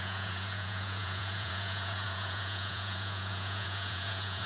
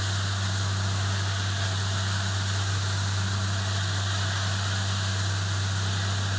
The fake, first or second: first